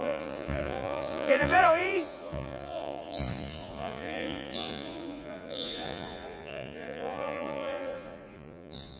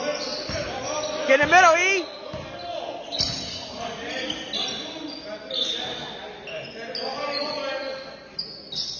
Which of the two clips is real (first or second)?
second